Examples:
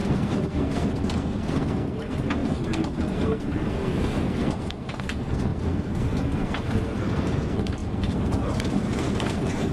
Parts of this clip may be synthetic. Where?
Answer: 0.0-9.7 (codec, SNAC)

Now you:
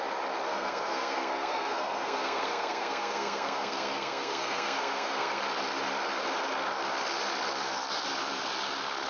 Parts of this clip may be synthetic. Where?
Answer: 0.5-5.4 (codec, SNAC)